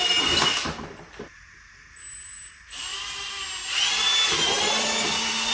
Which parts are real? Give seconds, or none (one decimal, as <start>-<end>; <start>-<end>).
2.9-4.7